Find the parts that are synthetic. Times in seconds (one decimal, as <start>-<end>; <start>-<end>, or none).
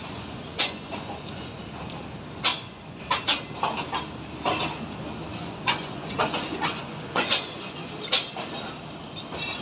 0.0-1.6; 2.5-3.0; 5.3-7.9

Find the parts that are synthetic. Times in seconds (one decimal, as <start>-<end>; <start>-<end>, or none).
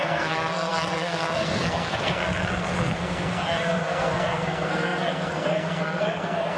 0.0-6.6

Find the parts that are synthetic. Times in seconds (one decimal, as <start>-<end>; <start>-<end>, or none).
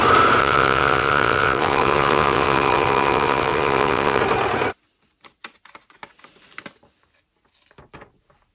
0.4-4.2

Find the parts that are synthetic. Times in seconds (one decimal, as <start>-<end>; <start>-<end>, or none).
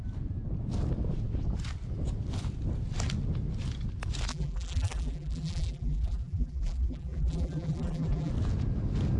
4.3-8.3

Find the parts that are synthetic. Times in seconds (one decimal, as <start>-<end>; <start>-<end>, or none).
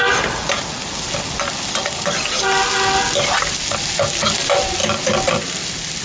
none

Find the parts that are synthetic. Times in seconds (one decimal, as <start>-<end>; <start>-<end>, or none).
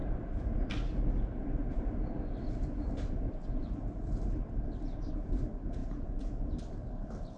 5.8-6.5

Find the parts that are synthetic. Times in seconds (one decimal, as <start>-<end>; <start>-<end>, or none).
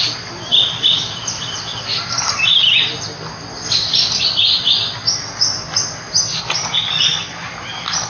0.0-1.7; 6.4-8.1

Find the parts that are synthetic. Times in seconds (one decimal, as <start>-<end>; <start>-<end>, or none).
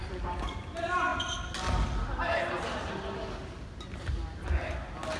none